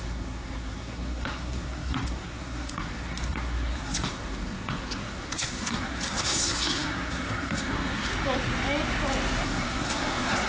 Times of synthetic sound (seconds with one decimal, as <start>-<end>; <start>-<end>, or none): 0.0-8.1; 9.4-10.5